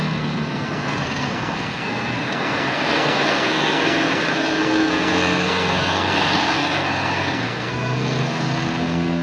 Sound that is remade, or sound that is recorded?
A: remade